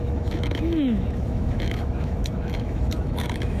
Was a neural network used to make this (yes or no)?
yes